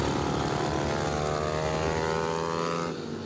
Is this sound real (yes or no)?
yes